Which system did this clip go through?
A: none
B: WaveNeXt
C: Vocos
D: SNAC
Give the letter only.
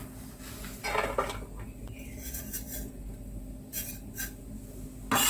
A